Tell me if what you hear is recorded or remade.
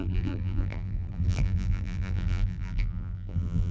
remade